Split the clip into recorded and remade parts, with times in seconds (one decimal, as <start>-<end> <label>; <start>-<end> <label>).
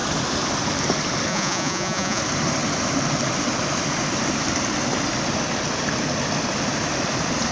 0.0-1.3 recorded; 1.3-2.2 remade; 2.2-7.5 recorded